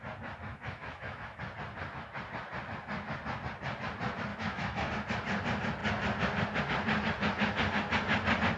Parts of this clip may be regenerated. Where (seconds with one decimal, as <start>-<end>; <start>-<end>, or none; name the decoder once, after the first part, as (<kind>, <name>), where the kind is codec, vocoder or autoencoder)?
0.5-1.4 (autoencoder, DAC-VAE); 4.3-4.9